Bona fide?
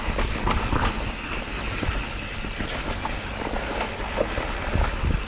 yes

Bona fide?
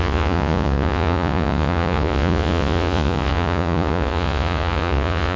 no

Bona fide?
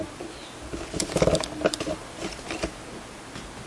yes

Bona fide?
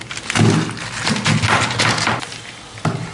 yes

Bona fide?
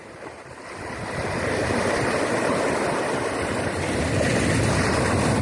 yes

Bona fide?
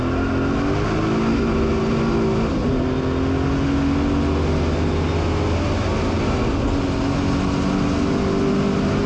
yes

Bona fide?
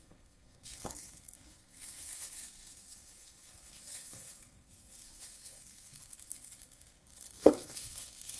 no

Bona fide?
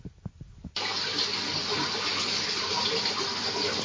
yes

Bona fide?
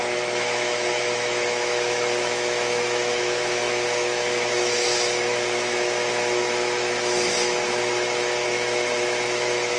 no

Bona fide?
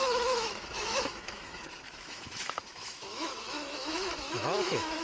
no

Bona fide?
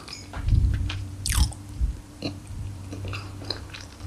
no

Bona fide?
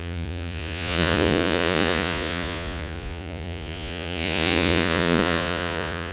no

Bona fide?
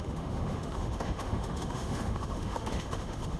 no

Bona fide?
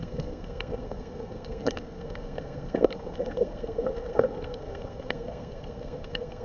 no